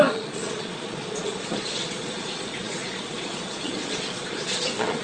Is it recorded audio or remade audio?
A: remade